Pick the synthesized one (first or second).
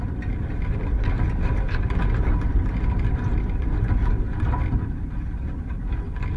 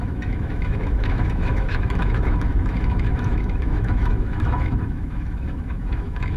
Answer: second